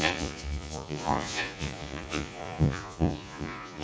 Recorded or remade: remade